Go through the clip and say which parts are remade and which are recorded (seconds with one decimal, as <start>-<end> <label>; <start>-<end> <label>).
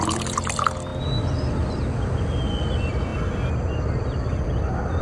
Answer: 0.0-5.0 recorded